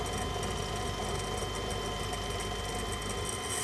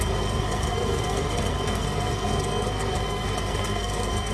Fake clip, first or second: second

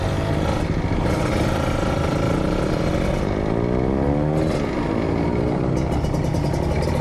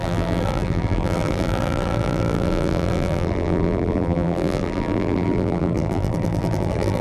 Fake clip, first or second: second